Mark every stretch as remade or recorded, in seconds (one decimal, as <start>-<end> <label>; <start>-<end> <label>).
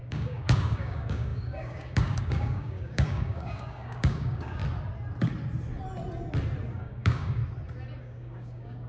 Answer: 0.0-4.6 remade; 4.6-6.7 recorded; 6.7-7.4 remade; 7.4-8.0 recorded; 8.0-8.9 remade